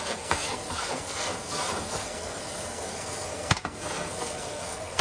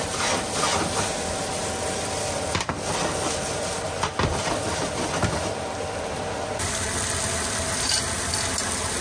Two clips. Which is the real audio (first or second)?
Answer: second